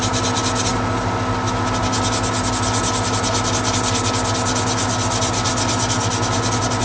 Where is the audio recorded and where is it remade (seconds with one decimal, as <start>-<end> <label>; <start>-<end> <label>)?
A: 0.0-6.8 recorded